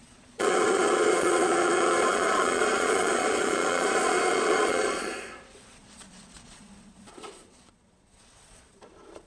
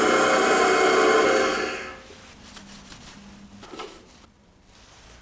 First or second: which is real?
second